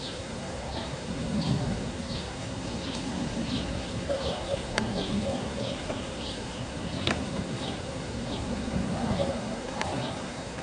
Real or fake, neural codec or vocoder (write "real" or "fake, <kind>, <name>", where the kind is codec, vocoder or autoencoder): fake, codec, SNAC